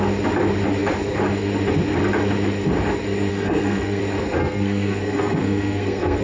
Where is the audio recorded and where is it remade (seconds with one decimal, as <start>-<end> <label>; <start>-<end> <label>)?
0.0-3.3 recorded; 3.3-4.0 remade; 4.0-4.4 recorded; 4.4-6.2 remade